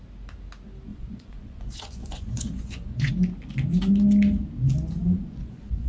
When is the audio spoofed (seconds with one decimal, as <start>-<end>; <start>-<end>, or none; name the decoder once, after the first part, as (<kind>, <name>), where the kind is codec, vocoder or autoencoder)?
0.9-3.1 (vocoder, Vocos); 5.0-5.9